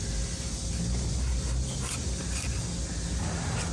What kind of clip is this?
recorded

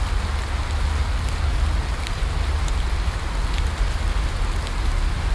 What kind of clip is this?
recorded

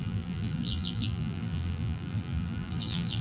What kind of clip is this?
remade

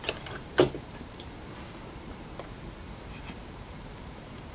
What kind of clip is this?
remade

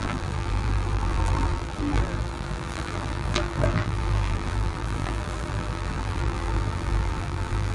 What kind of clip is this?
remade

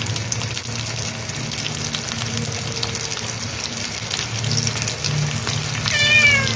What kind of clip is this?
recorded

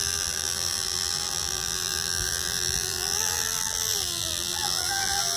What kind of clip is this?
remade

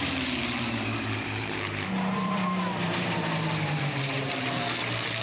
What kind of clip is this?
remade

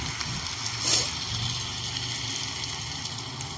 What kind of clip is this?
recorded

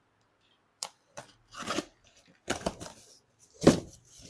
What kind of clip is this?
remade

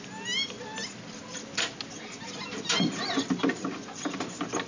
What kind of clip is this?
recorded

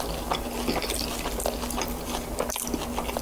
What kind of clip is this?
recorded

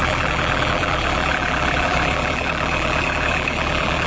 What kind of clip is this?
remade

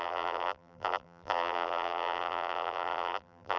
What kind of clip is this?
remade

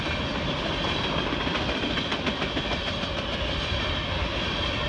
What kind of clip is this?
remade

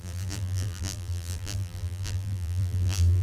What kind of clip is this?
remade